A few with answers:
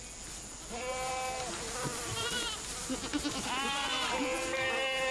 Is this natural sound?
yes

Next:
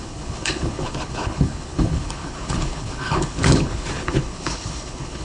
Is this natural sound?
no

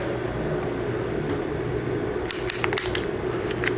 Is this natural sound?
yes